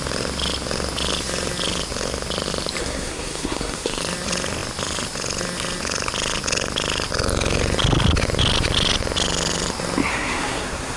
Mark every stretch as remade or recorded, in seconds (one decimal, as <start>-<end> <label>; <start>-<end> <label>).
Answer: 0.0-2.8 recorded; 2.8-4.0 remade; 4.0-10.1 recorded; 10.1-11.0 remade